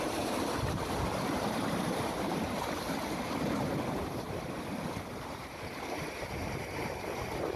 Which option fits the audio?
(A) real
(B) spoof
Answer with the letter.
B